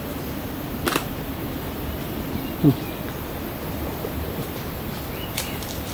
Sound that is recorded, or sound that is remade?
remade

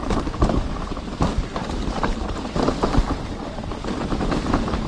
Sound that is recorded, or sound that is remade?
remade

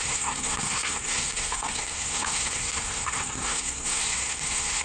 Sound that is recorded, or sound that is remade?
remade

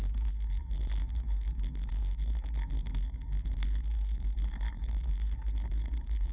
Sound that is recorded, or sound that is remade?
remade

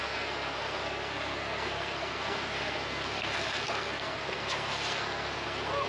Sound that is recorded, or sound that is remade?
remade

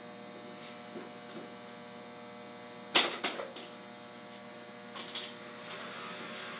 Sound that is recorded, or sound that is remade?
recorded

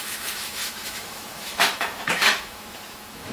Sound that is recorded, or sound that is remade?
remade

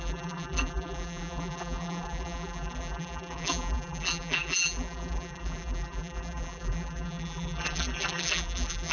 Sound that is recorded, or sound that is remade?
remade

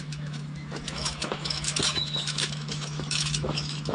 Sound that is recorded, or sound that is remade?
remade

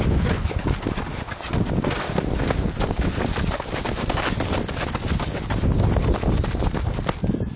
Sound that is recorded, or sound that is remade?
recorded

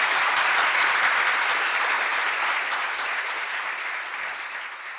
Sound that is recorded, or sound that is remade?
recorded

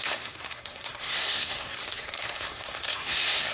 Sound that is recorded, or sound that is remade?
remade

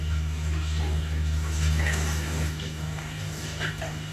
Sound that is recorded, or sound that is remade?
remade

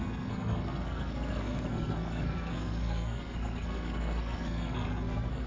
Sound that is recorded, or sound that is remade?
remade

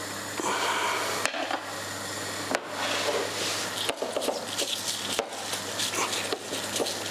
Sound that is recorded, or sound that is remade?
recorded